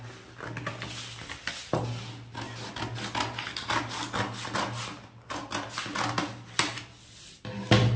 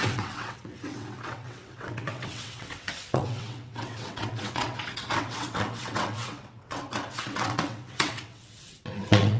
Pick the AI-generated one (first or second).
second